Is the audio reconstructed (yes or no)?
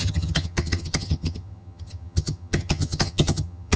yes